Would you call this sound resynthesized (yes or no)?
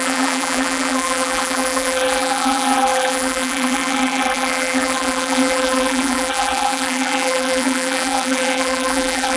yes